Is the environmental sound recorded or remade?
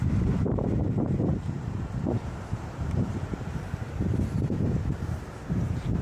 remade